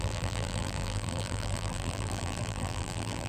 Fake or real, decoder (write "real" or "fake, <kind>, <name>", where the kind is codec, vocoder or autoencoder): fake, vocoder, BigVGAN v2